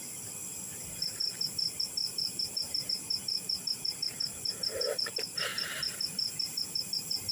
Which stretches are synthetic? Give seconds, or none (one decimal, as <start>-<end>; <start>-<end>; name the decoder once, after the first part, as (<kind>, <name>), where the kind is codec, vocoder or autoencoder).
0.7-1.3 (vocoder, BigVGAN v2); 2.0-2.9; 5.5-7.3